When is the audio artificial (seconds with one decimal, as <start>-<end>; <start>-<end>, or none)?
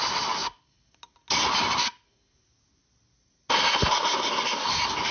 none